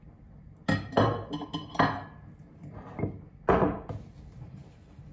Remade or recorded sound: recorded